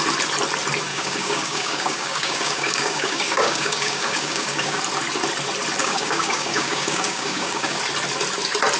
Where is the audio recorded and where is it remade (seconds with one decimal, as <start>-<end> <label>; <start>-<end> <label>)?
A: 0.0-0.9 recorded; 0.9-4.8 remade; 4.8-5.8 recorded; 5.8-7.8 remade; 7.8-8.8 recorded